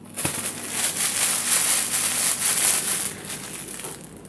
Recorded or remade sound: recorded